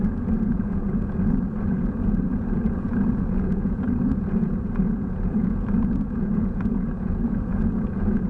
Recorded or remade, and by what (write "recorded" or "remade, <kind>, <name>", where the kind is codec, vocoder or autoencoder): remade, vocoder, Vocos